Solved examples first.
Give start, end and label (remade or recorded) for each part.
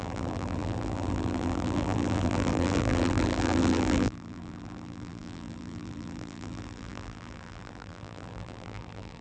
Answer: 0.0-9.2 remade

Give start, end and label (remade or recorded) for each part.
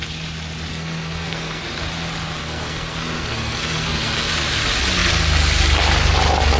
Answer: 0.0-0.7 recorded; 0.7-1.6 remade; 1.6-2.4 recorded; 2.4-4.3 remade; 4.3-6.6 recorded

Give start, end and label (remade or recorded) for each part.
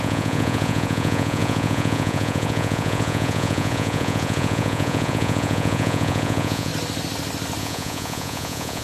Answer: 0.0-6.7 remade; 6.7-7.6 recorded; 7.6-8.8 remade